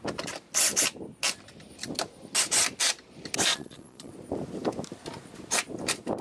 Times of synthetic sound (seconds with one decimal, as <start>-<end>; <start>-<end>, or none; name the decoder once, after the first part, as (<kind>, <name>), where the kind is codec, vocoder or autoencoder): 3.5-4.1 (vocoder, Vocos)